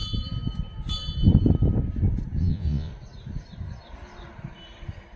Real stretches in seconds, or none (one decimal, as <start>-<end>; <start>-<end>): 0.0-2.4; 2.9-5.2